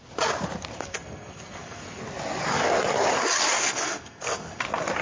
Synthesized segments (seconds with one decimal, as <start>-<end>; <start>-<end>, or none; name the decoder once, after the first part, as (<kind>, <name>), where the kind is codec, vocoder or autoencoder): 0.9-2.0 (codec, SNAC); 3.6-4.6